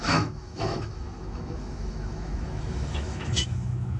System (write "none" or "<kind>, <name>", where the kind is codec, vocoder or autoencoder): autoencoder, DAC-VAE